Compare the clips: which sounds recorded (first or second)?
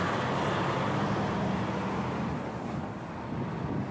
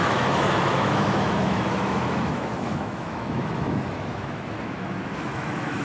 first